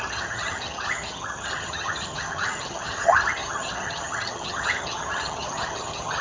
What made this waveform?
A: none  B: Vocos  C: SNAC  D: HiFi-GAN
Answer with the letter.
D